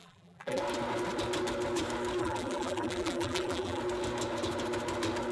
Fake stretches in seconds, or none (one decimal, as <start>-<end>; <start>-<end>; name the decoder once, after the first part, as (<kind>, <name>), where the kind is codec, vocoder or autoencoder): 0.0-0.6 (vocoder, BigVGAN v2); 2.2-3.8

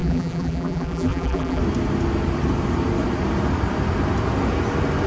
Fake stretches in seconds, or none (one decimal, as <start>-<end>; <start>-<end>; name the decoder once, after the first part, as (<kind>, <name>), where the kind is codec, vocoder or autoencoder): 0.0-1.6 (vocoder, BigVGAN v2)

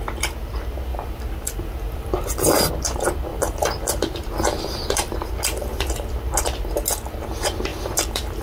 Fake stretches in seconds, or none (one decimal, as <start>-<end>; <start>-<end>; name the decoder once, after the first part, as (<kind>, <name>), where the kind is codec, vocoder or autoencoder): 0.9-2.7 (vocoder, BigVGAN v2); 3.3-5.3; 7.7-8.4

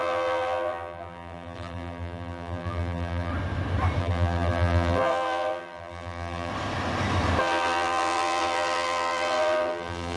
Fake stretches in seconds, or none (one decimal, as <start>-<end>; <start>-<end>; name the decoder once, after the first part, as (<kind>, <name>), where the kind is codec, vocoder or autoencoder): 0.0-3.3 (vocoder, BigVGAN v2); 4.0-6.5; 7.4-10.2

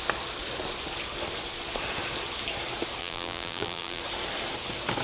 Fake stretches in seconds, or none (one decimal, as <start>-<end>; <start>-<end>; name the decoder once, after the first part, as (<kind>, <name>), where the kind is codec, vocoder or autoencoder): 3.0-4.0 (vocoder, BigVGAN v2)